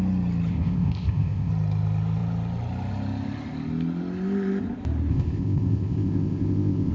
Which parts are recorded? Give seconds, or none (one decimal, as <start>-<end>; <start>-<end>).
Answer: 0.0-0.5; 1.5-5.1